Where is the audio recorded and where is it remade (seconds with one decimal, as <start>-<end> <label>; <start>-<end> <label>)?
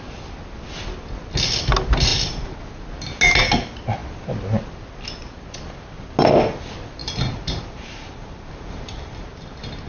0.0-2.1 recorded; 2.1-2.6 remade; 2.6-7.0 recorded; 7.0-9.2 remade; 9.2-9.9 recorded